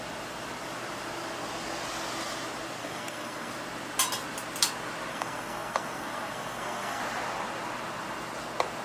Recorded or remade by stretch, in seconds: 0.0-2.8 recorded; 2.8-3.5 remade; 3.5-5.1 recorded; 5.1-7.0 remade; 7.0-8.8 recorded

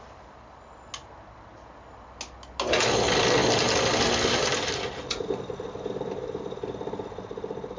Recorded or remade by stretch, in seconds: 0.0-7.8 recorded

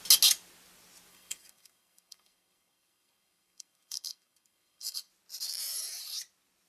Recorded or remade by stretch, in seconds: 0.0-1.1 recorded; 1.1-5.1 remade; 5.1-6.7 recorded

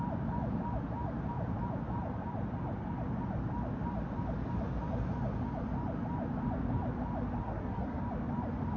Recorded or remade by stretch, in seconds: 0.0-7.4 recorded; 7.4-8.0 remade; 8.0-8.8 recorded

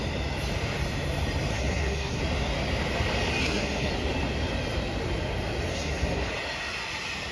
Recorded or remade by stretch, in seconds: 0.0-1.5 recorded; 1.5-2.2 remade; 2.2-3.4 recorded; 3.4-3.9 remade; 3.9-5.7 recorded; 5.7-6.3 remade; 6.3-7.3 recorded

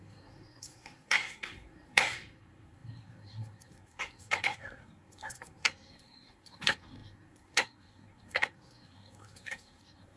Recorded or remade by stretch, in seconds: 0.0-10.2 remade